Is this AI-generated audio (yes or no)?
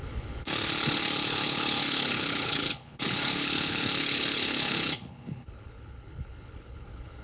yes